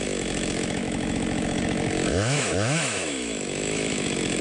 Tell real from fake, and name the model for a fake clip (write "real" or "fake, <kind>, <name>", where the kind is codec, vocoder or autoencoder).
fake, autoencoder, DAC-VAE